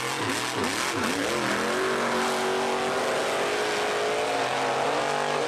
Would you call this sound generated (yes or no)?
no